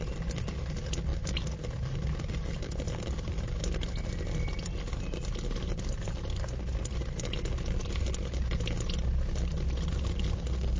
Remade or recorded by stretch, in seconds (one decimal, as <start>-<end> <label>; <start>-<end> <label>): 0.0-10.8 recorded